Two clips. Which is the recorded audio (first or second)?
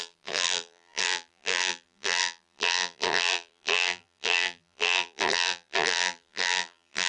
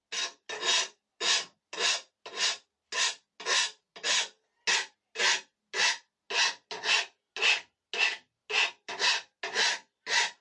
second